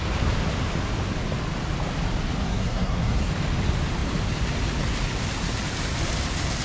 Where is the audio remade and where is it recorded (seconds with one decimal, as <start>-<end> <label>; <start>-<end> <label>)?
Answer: 0.0-2.5 recorded; 2.5-3.3 remade; 3.3-6.6 recorded